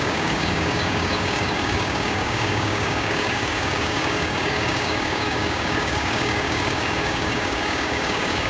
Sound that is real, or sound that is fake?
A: fake